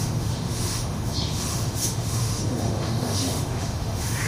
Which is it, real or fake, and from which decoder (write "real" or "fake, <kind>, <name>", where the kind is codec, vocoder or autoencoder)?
fake, autoencoder, DAC-VAE